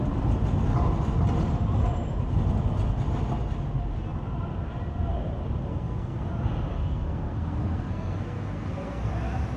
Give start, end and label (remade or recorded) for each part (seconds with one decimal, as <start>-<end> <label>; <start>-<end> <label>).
0.0-5.7 recorded; 5.7-6.3 remade; 6.3-6.7 recorded; 6.7-9.1 remade; 9.1-9.6 recorded